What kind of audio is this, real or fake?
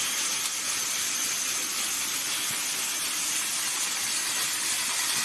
real